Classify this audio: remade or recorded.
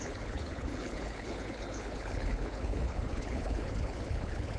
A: remade